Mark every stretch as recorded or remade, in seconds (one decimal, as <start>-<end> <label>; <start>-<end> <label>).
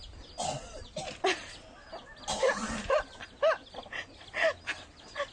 0.0-5.3 recorded